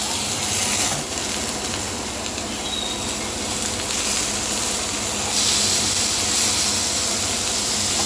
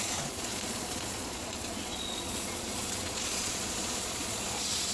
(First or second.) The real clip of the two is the first